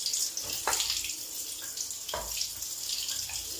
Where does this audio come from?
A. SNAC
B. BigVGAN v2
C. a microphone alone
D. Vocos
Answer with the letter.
C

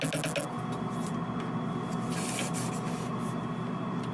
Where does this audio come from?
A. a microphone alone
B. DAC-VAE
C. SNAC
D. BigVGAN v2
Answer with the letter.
A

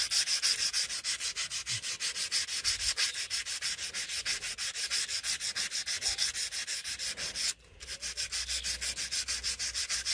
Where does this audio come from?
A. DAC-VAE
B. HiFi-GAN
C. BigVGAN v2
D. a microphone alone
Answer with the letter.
D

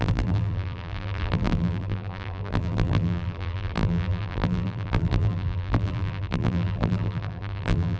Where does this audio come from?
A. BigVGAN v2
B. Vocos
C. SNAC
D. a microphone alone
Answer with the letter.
A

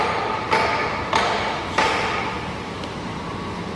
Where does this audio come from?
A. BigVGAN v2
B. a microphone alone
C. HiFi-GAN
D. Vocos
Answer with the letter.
B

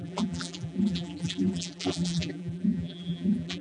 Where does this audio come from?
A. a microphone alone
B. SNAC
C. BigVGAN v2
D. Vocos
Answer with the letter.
C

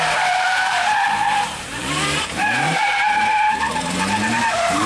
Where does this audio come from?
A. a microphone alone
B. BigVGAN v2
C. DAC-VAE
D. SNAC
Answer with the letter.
B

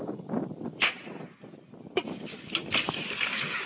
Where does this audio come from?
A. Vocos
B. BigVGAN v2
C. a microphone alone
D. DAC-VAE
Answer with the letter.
B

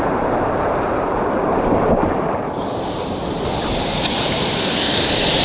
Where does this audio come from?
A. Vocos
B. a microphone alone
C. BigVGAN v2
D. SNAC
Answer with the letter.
C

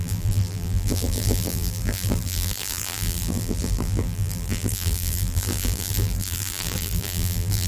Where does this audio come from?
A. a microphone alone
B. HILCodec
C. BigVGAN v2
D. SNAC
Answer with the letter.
C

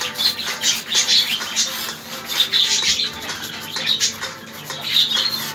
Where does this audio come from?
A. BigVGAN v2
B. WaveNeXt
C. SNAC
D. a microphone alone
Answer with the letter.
D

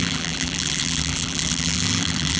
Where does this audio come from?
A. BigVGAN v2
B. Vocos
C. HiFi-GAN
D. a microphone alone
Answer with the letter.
A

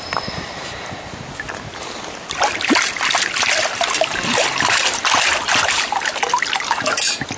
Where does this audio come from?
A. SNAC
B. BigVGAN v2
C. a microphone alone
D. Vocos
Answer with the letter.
C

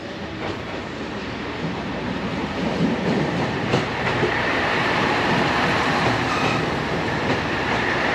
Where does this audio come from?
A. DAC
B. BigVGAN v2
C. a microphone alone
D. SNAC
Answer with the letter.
B